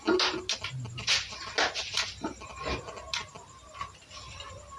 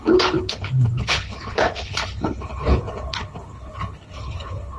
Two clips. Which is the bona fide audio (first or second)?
first